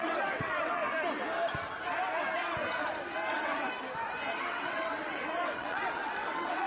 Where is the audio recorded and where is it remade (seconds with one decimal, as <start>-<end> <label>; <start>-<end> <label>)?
0.0-0.8 remade; 0.8-3.3 recorded; 3.3-3.7 remade; 3.7-4.5 recorded; 4.5-6.7 remade